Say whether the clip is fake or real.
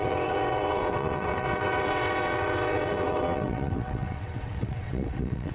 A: fake